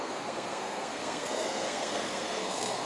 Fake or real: fake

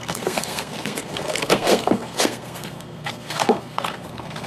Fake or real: fake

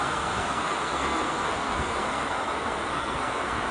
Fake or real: fake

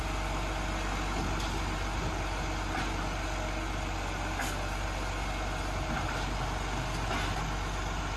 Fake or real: real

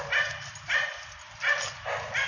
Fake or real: real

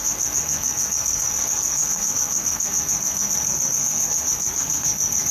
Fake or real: fake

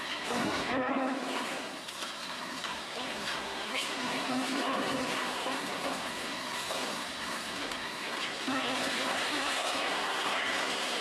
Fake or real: fake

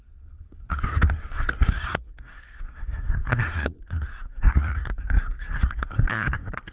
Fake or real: fake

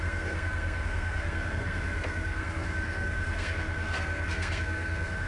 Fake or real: fake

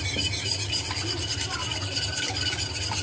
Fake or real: real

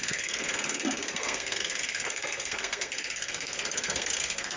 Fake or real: fake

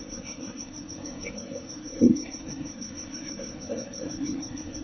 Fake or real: fake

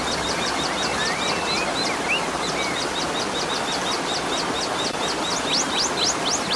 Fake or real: real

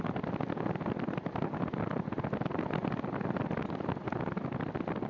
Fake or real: real